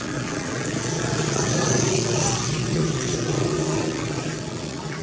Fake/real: fake